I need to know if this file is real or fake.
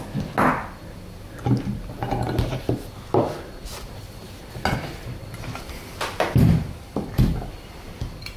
real